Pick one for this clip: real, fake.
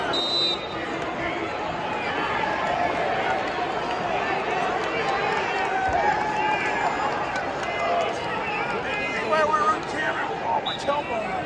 real